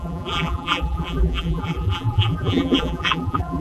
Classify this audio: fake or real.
fake